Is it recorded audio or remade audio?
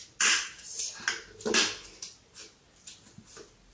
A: recorded